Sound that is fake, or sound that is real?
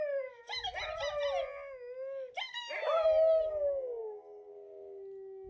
real